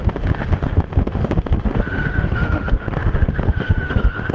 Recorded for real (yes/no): no